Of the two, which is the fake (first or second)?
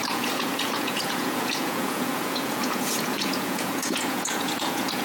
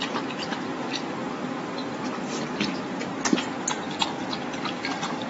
first